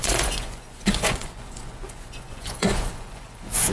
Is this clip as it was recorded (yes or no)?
no